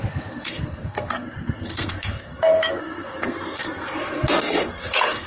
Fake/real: fake